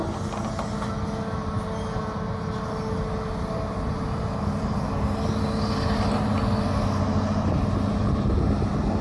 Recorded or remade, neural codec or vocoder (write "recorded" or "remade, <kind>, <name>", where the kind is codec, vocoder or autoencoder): recorded